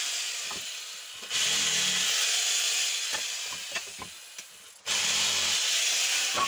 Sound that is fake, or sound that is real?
real